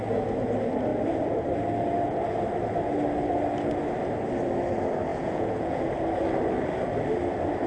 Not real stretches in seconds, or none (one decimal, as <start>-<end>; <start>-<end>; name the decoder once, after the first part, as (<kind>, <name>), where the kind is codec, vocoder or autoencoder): 5.1-5.8 (vocoder, Vocos)